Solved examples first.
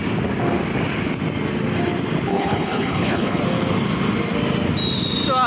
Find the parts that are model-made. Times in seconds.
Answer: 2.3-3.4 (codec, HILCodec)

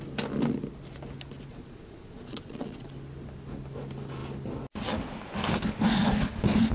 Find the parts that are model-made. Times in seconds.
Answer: 1.5-2.9 (vocoder, Vocos)

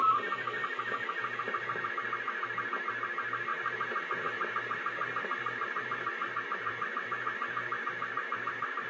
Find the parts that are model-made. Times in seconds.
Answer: 3.5-8.9 (vocoder, BigVGAN v2)

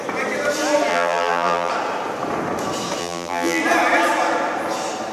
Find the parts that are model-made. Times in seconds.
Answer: 0.9-1.7 (vocoder, BigVGAN v2); 3.0-3.6

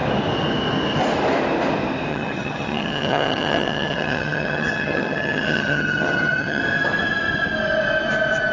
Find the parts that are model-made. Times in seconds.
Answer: 2.1-6.6 (vocoder, HiFi-GAN)

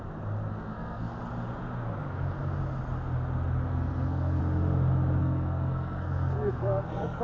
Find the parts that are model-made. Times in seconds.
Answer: 0.5-1.2 (codec, SNAC); 3.7-4.4; 5.2-7.2